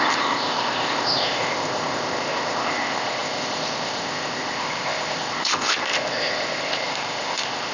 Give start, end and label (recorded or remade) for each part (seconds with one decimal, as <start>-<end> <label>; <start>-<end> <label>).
0.0-7.7 remade